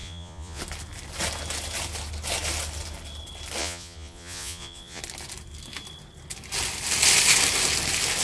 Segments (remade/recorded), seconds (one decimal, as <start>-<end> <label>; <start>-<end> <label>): 0.0-0.6 remade; 0.6-3.6 recorded; 3.6-5.0 remade; 5.0-8.2 recorded